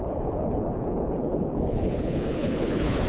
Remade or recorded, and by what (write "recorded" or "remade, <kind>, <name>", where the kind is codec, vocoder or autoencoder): remade, codec, HILCodec